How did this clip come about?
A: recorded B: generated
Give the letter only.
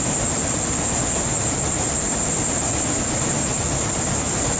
A